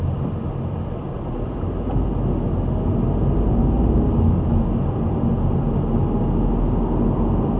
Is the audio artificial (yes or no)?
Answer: no